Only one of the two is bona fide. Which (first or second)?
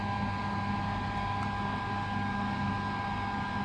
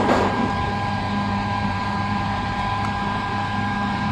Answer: first